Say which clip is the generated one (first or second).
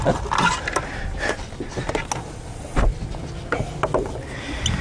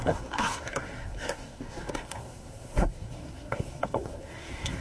second